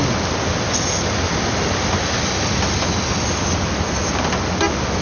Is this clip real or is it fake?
real